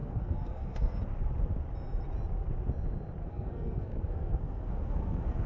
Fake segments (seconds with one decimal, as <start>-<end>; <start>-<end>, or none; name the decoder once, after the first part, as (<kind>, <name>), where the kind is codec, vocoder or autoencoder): 0.0-1.0 (codec, SNAC); 3.2-5.5